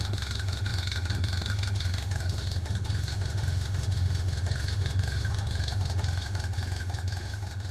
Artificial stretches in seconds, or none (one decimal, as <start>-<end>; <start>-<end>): 0.0-7.7